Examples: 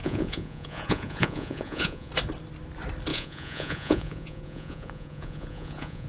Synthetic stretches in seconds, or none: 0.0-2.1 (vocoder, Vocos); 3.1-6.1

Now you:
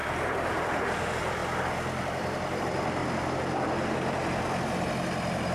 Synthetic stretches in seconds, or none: 0.0-0.8 (vocoder, BigVGAN v2)

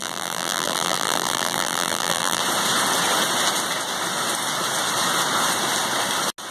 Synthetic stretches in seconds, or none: 0.0-2.4 (vocoder, BigVGAN v2)

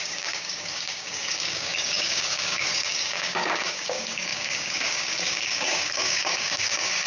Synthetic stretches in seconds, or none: 0.0-7.1 (codec, DAC)

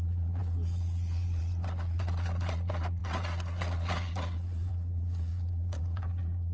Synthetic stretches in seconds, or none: 0.0-6.5 (vocoder, Vocos)

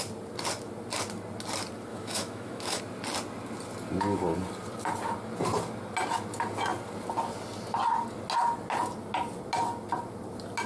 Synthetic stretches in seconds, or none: 1.9-2.8 (autoencoder, DAC-VAE)

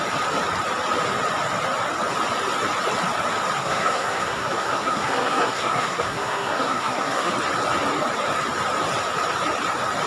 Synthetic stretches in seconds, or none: 3.6-7.3 (codec, SNAC)